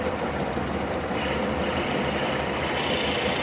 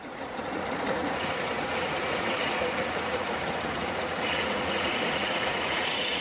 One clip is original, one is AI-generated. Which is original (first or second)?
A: first